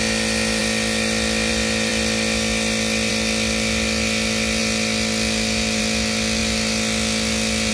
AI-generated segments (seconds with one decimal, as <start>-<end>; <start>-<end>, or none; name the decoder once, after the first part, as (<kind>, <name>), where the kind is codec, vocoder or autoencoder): none

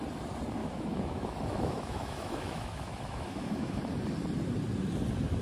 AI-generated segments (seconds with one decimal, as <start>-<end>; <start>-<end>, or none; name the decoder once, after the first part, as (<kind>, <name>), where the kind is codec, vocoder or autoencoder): 0.6-3.8 (autoencoder, DAC-VAE)

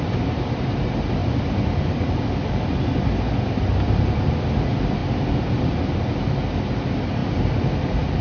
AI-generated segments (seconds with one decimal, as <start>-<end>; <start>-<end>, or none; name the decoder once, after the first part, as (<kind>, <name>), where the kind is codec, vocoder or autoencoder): 7.2-8.2 (vocoder, BigVGAN v2)